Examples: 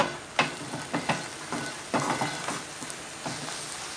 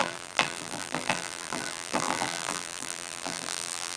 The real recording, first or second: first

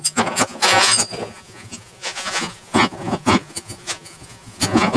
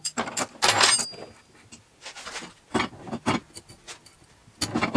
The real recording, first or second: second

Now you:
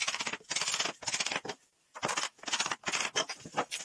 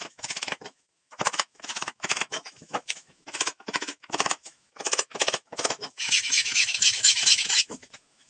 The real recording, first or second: first